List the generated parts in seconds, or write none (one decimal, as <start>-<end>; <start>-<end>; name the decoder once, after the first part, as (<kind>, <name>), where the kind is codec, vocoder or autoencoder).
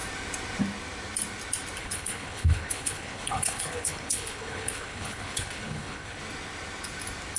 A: 1.8-6.2 (codec, HILCodec)